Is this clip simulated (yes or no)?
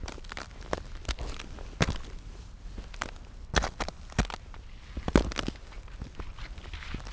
no